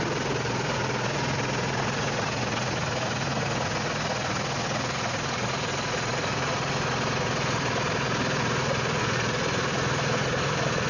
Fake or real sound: fake